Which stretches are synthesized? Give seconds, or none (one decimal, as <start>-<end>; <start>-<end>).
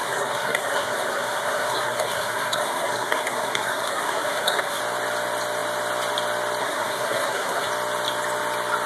0.0-4.8; 6.6-7.7